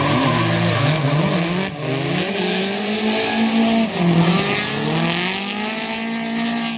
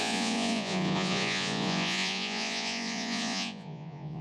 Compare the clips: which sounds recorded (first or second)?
first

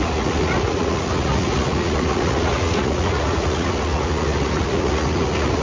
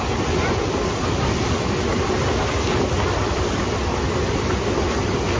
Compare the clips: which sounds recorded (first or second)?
second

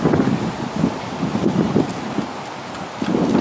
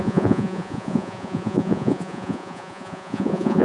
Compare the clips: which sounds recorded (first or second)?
first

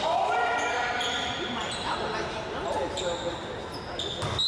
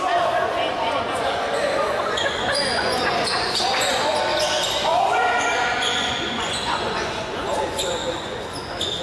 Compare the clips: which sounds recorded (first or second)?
first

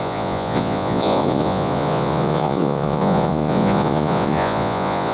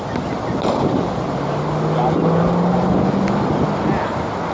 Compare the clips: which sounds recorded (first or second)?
second